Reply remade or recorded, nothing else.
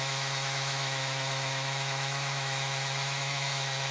remade